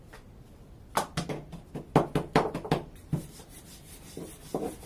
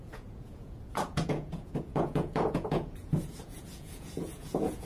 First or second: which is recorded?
first